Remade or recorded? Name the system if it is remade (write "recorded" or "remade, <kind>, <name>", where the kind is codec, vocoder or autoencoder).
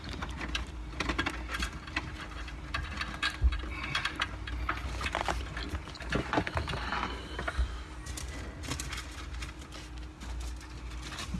recorded